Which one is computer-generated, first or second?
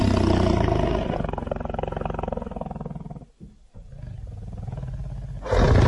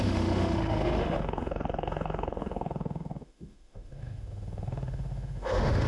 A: second